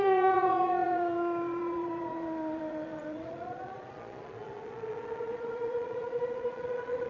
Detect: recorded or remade remade